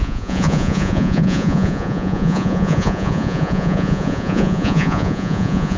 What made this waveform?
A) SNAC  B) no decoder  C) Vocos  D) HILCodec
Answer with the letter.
C